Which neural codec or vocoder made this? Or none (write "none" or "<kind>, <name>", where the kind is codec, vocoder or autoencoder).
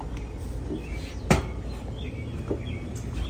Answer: none